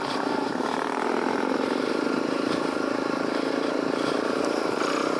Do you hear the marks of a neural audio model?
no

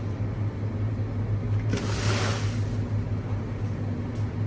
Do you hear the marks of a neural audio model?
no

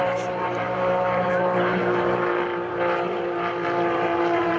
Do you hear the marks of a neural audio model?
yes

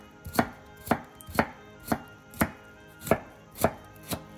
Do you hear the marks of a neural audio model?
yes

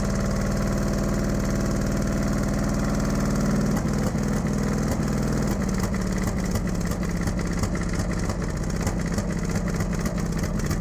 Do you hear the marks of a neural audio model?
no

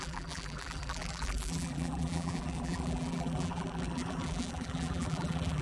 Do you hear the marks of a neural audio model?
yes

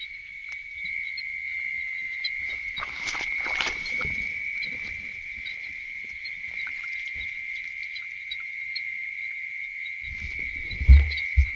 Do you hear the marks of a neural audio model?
yes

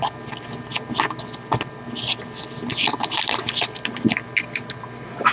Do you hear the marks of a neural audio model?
no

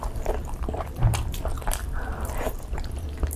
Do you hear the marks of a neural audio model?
yes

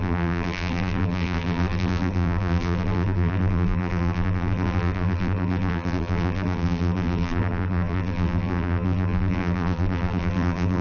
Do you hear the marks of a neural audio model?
yes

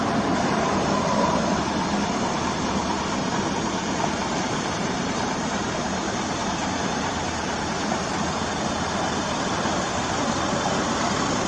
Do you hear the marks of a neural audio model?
yes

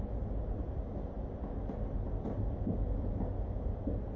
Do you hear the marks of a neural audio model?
no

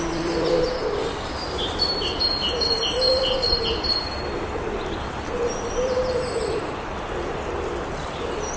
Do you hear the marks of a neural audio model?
yes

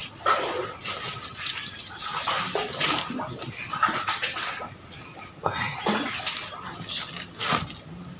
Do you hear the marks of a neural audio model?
no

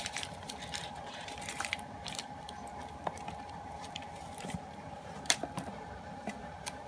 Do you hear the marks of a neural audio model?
yes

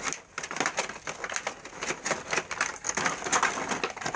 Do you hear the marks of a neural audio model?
no